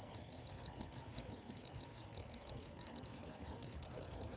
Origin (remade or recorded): remade